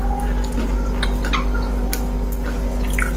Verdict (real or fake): real